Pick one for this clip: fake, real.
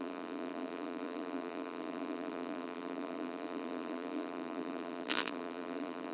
fake